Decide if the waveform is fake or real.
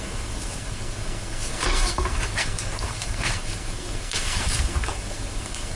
fake